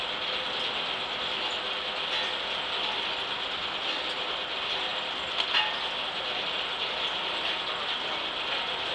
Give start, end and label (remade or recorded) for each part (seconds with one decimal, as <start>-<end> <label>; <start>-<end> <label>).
0.0-8.9 recorded